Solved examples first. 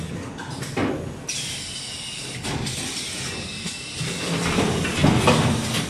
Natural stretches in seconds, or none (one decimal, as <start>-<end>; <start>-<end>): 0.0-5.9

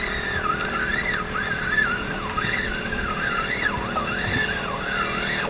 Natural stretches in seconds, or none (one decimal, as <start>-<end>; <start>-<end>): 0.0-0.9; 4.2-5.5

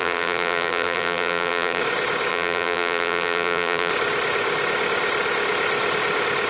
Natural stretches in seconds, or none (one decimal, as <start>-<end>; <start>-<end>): 1.8-2.3; 3.9-6.5

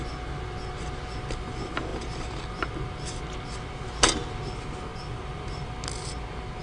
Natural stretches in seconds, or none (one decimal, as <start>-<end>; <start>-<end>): 0.0-1.9; 2.7-4.9; 5.7-6.6

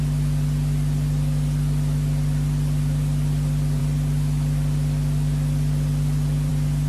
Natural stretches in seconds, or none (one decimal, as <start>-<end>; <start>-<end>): 0.0-6.9

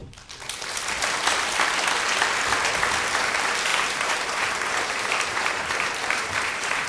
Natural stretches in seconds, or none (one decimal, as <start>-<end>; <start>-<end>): 0.0-3.1

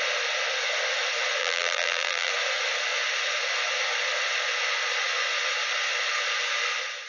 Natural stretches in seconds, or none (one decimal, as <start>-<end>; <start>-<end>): 0.0-1.4; 2.3-7.1